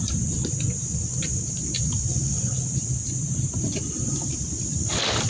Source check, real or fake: fake